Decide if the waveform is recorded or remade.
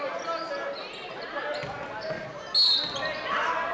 recorded